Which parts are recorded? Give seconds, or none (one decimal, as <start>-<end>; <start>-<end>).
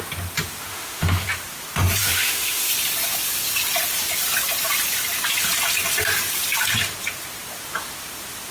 0.0-0.7; 1.3-2.0; 2.7-8.5